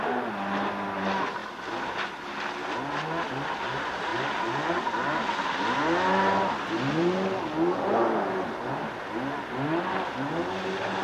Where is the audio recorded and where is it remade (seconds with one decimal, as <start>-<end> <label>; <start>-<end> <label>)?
0.0-11.0 recorded